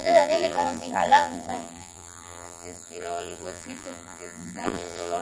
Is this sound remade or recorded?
remade